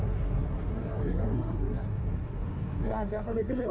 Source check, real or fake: fake